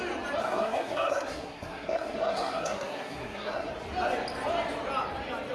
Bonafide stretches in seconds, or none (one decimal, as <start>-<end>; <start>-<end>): 0.0-0.4; 3.7-5.5